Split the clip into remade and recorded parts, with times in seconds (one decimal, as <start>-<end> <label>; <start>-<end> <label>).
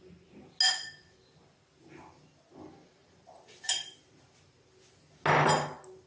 0.0-3.0 recorded; 3.0-4.1 remade; 4.1-6.1 recorded